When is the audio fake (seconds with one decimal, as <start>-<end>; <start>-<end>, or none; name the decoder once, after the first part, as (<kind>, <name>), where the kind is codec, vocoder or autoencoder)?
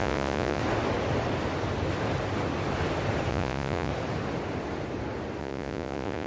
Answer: 0.0-0.6 (vocoder, Vocos); 3.3-3.9; 5.4-6.3